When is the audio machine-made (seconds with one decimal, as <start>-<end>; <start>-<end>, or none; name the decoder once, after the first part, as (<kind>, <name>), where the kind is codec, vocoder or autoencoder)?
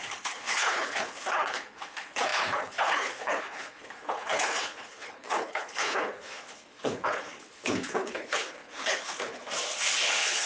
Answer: 0.0-9.4 (codec, HILCodec); 10.0-10.5